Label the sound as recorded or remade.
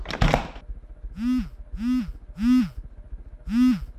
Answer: recorded